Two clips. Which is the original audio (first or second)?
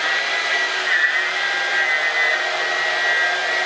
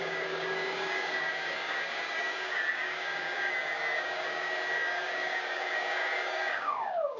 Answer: first